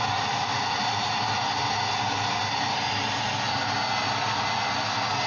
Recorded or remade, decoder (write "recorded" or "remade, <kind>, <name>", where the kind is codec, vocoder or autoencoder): recorded